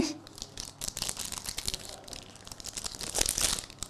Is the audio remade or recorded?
recorded